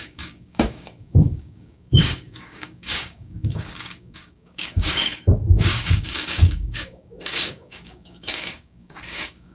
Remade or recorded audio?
remade